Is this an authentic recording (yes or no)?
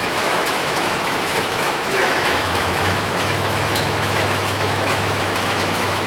no